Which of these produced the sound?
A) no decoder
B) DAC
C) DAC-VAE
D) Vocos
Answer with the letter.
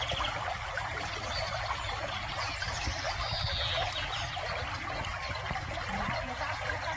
A